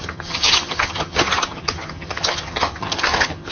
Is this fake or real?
fake